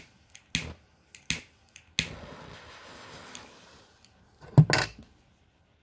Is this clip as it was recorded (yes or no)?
yes